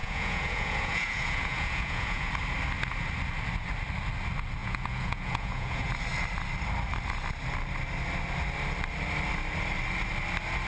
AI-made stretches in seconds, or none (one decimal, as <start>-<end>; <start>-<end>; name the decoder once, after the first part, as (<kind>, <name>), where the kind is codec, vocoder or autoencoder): 0.0-2.3 (vocoder, Vocos); 4.6-5.9